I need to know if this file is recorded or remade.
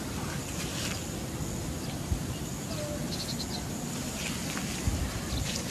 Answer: recorded